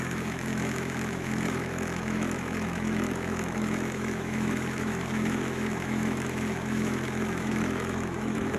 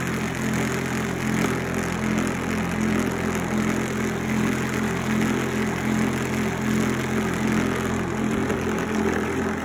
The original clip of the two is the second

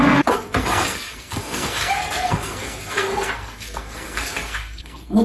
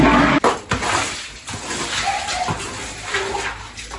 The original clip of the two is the second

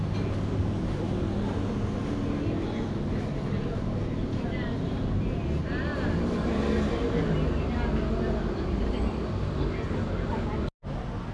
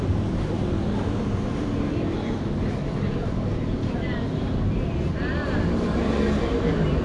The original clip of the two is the first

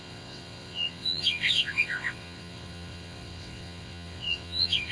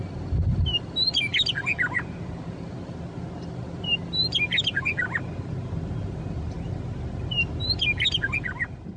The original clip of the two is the second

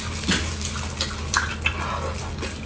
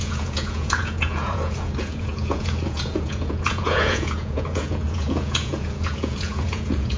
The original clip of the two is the first